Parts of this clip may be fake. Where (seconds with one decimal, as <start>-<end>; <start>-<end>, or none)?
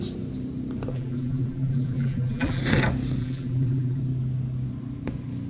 0.9-2.6; 3.2-4.0